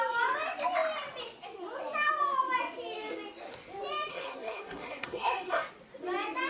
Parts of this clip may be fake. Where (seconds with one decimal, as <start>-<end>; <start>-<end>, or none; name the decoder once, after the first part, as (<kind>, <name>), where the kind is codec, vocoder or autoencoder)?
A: 4.1-5.7 (codec, SNAC)

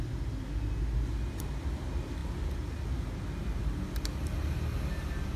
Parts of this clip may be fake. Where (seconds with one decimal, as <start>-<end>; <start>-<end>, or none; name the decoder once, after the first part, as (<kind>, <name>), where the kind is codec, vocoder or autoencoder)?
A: none

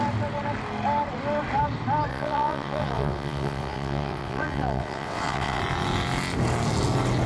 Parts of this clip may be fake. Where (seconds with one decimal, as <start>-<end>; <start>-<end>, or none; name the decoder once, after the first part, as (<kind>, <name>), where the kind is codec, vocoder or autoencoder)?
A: 2.1-5.6 (vocoder, WaveNeXt)